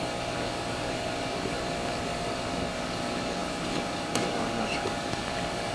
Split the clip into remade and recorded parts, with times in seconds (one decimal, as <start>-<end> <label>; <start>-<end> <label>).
0.0-5.7 remade